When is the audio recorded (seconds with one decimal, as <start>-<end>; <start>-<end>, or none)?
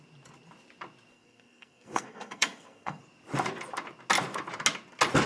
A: 0.0-1.1; 3.0-5.3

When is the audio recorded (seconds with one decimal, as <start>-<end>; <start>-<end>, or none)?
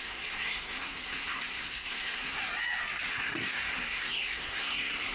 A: 2.4-3.1